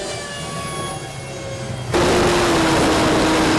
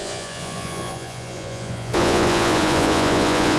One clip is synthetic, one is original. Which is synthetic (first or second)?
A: second